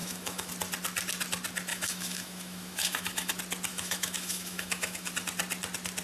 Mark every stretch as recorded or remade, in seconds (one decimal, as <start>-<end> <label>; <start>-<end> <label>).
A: 0.0-0.5 remade; 0.5-1.7 recorded; 1.7-3.3 remade; 3.3-3.7 recorded; 3.7-5.1 remade; 5.1-6.0 recorded